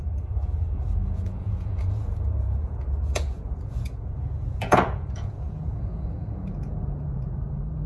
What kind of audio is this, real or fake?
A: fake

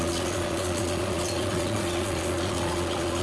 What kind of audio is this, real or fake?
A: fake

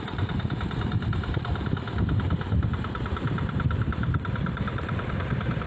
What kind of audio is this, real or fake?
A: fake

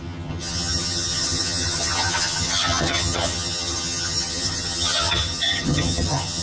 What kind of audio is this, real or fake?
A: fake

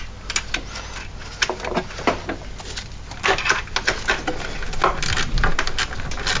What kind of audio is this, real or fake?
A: real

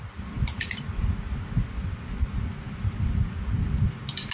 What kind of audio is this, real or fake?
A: real